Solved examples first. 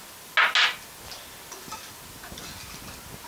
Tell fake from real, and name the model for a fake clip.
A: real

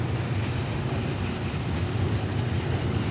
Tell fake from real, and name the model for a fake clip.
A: real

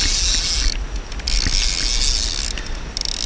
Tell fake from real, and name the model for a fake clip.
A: real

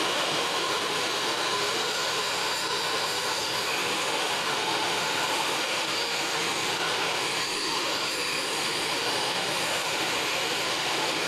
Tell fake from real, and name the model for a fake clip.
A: fake, autoencoder, DAC-VAE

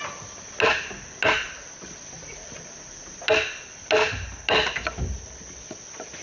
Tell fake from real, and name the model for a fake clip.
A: real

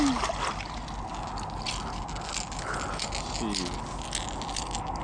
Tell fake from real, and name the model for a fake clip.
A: real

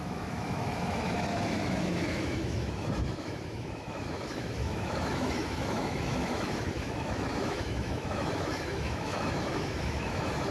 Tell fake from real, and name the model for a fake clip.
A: fake, autoencoder, DAC-VAE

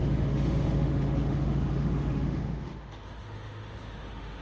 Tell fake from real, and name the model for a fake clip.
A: fake, autoencoder, DAC-VAE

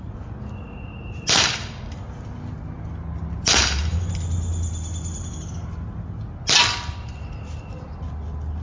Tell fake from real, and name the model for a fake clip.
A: real